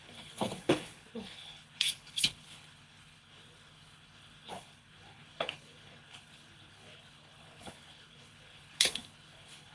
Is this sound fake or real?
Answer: fake